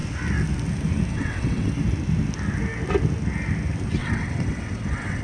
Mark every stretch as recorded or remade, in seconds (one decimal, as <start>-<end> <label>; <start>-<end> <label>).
0.0-1.1 recorded; 1.1-1.7 remade; 1.7-4.0 recorded; 4.0-5.2 remade